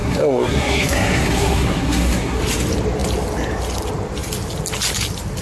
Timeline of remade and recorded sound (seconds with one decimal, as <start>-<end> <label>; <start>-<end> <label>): 0.0-2.4 remade; 2.4-5.4 recorded